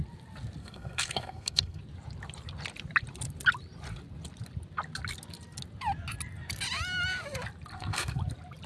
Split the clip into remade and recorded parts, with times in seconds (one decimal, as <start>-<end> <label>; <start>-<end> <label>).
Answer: 0.0-0.6 recorded; 0.6-1.8 remade; 1.8-7.7 recorded; 7.7-8.2 remade; 8.2-8.7 recorded